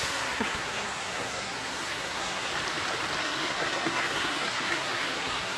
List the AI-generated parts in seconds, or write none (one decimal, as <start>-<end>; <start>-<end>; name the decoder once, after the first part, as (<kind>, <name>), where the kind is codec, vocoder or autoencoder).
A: 0.0-2.5 (codec, SNAC); 3.2-5.6